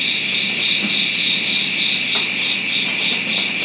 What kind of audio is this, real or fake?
real